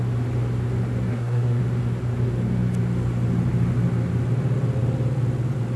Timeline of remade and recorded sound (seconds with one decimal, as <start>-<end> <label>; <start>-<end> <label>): 0.0-1.1 recorded; 1.1-1.6 remade; 1.6-5.8 recorded